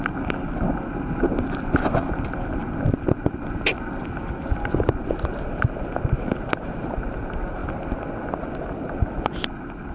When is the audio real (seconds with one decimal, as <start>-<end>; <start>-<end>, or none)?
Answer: 0.0-9.9